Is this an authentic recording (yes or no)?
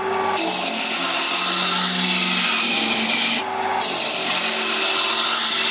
yes